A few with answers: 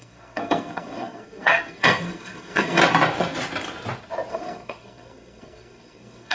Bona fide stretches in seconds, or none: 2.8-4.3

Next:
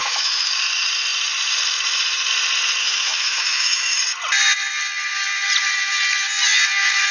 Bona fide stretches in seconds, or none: 0.5-2.8; 4.0-7.1